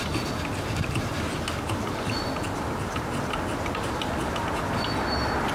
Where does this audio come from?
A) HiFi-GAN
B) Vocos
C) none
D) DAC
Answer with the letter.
C